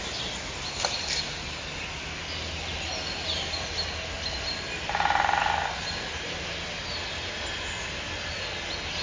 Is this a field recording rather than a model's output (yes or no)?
yes